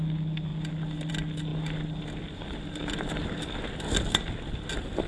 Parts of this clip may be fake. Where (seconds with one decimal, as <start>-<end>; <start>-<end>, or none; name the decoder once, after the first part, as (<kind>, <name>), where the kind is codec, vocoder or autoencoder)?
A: none